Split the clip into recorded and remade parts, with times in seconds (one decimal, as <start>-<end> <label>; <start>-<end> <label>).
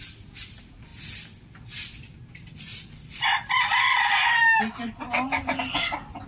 0.0-6.3 recorded